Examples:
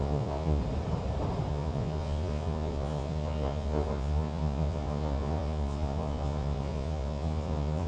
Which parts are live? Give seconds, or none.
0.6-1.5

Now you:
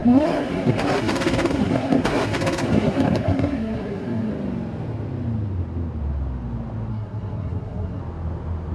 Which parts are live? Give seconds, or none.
4.3-6.9; 8.0-8.7

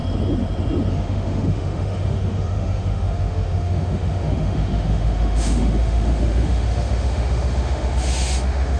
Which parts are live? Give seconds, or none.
0.0-0.9

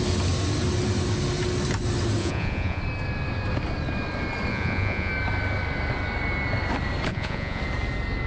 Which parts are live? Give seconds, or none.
0.0-2.2; 2.8-4.5; 5.1-7.1; 7.6-8.3

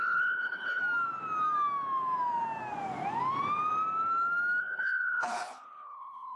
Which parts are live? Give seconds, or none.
0.8-4.6

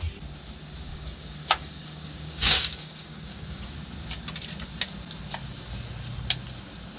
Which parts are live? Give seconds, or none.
0.0-0.9; 3.7-7.0

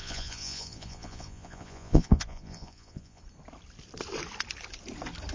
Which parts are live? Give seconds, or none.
3.2-5.3

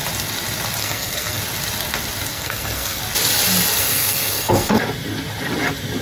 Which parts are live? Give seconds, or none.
0.0-0.8; 1.4-2.3; 3.0-3.7; 4.8-6.0